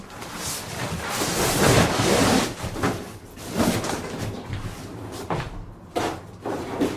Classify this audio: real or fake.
fake